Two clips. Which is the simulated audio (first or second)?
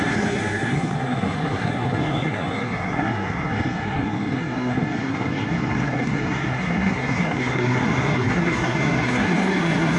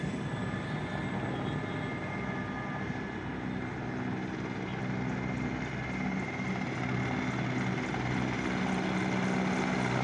first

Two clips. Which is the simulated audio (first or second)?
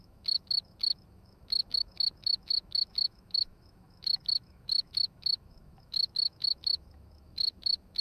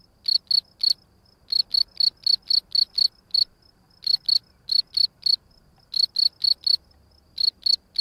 first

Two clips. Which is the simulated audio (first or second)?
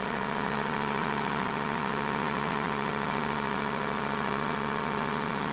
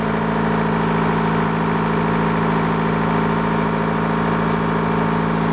first